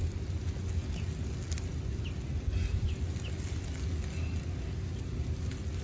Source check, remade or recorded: recorded